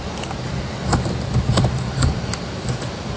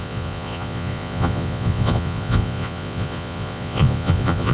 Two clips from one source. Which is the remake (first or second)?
second